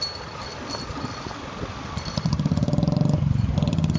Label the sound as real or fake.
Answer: real